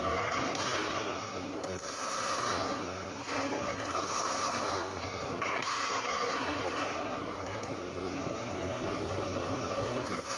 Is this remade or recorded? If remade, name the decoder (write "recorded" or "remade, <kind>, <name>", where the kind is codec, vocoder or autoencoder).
remade, codec, SNAC